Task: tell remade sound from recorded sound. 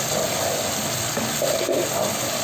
recorded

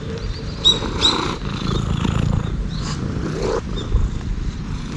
remade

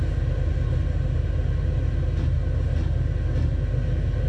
recorded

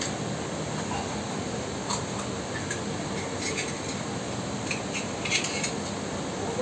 recorded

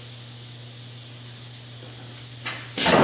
recorded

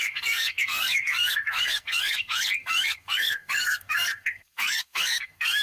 remade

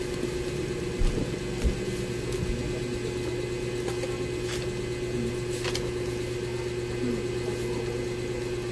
recorded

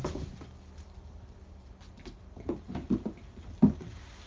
recorded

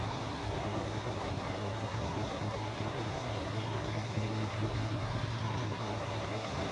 remade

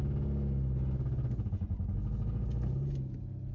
recorded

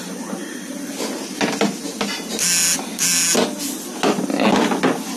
recorded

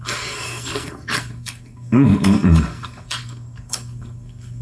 remade